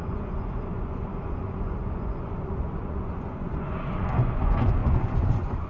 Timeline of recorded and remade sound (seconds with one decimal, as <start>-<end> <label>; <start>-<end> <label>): 0.0-5.7 remade